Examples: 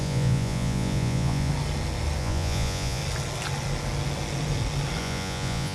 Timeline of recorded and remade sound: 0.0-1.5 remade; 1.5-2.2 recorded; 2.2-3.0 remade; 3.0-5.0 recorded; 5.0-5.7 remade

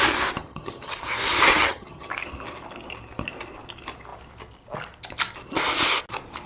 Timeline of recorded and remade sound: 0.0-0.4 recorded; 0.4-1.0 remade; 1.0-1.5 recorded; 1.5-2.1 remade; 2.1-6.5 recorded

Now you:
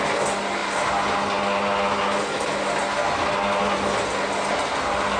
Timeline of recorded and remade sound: 0.0-5.2 recorded

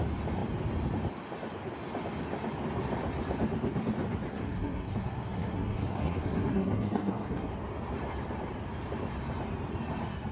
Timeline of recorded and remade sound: 0.0-4.3 recorded; 4.3-7.5 remade; 7.5-10.3 recorded

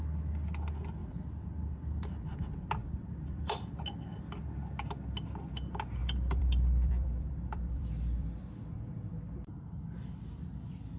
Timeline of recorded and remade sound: 0.0-1.0 recorded; 1.0-2.2 remade; 2.2-2.8 recorded; 2.8-3.7 remade; 3.7-6.0 recorded; 6.0-9.6 remade; 9.6-11.0 recorded

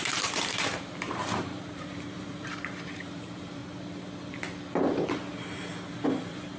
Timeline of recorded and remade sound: 0.0-3.6 remade; 3.6-5.9 recorded; 5.9-6.6 remade

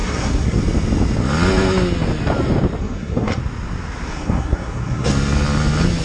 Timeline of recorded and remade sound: 0.0-0.6 remade; 0.6-2.8 recorded; 2.8-3.4 remade; 3.4-4.1 recorded; 4.1-5.1 remade; 5.1-6.0 recorded